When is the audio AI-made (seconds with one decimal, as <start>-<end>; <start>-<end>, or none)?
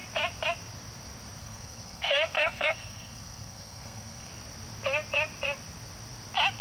1.4-4.3